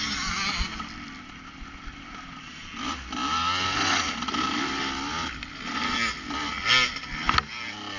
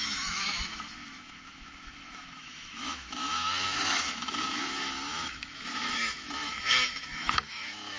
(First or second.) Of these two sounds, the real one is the first